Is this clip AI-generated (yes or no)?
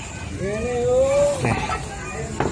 no